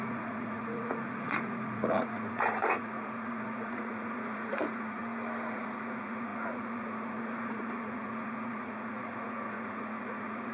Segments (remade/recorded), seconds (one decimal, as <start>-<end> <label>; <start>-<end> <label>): 0.0-5.0 remade; 5.0-5.5 recorded; 5.5-10.5 remade